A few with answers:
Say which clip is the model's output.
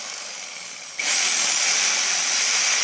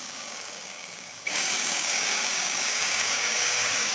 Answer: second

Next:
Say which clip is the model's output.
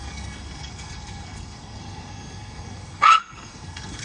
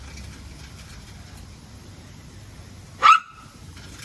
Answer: first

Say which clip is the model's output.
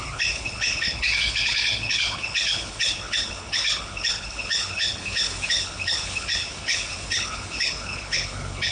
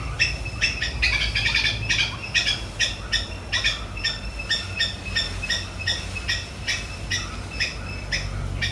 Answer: first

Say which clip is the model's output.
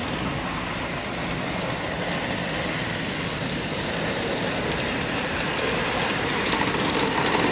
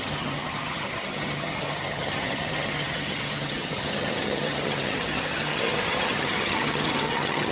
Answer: second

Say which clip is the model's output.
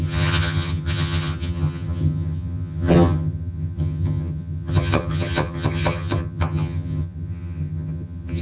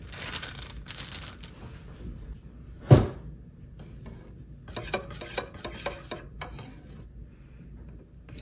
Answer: first